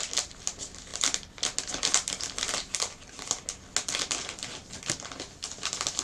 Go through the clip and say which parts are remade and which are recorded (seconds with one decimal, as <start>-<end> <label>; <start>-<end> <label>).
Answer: 0.0-6.0 recorded